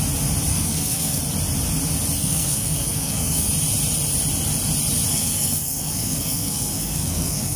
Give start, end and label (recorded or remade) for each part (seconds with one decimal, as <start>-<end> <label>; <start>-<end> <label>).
0.0-0.5 recorded; 0.5-1.2 remade; 1.2-2.2 recorded; 2.2-3.5 remade; 3.5-5.1 recorded; 5.1-7.6 remade